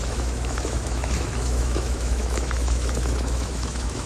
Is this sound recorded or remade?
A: remade